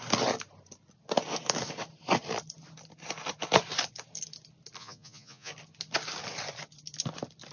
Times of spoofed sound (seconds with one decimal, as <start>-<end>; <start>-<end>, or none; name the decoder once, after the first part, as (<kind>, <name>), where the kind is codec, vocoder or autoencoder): 4.8-5.5 (vocoder, Vocos)